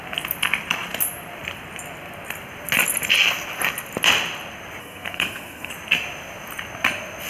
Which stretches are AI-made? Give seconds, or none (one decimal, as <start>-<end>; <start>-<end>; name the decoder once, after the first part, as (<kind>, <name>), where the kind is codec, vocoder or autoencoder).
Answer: 4.8-5.7 (codec, SNAC)